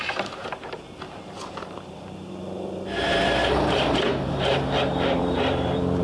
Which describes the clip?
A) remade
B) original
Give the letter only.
A